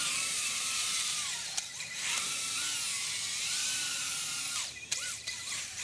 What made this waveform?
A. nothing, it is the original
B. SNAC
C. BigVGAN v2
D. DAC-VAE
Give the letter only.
C